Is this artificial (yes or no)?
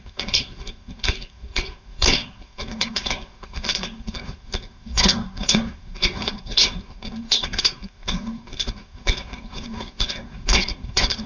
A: yes